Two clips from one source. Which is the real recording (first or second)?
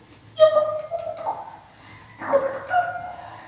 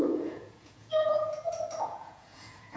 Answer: first